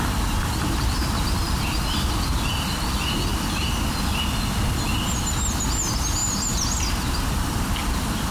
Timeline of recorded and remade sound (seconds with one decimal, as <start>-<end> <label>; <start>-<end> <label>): 0.0-6.2 recorded; 6.2-6.8 remade; 6.8-8.3 recorded